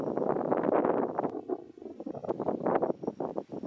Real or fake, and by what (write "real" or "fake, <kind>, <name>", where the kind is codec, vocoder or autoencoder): real